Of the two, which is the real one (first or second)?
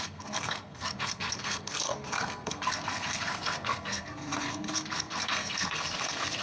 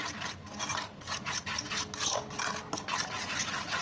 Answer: second